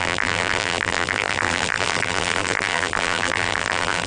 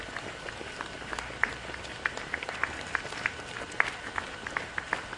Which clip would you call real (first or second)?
second